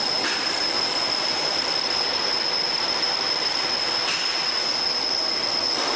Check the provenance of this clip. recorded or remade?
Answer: recorded